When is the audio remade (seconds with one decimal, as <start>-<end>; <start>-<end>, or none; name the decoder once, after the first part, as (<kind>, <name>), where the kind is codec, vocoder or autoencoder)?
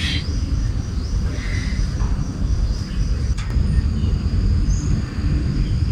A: 2.3-3.6 (vocoder, BigVGAN v2)